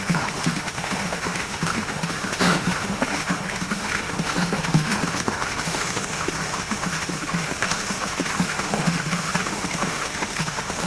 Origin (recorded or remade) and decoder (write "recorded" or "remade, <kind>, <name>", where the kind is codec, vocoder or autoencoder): remade, autoencoder, DAC-VAE